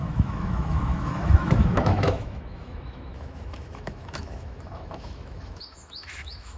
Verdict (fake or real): fake